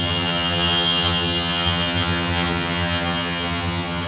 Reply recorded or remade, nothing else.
remade